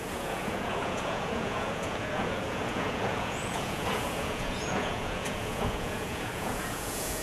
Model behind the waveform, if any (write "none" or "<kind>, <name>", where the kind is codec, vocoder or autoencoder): vocoder, Vocos